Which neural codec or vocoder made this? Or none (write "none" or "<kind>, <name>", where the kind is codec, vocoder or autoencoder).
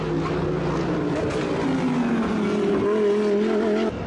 none